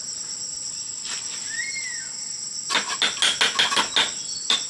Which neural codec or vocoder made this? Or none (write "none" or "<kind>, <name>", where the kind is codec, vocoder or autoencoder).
none